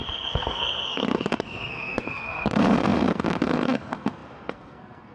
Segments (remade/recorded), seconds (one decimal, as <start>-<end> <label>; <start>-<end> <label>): 0.0-5.1 remade